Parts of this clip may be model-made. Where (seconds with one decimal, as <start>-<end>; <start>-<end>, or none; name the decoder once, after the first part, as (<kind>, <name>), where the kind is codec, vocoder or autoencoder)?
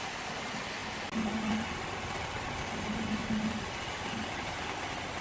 none